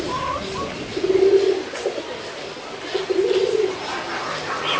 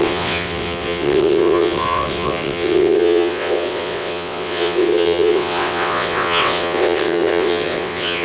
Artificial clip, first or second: second